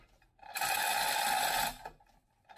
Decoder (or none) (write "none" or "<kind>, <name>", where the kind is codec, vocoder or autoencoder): none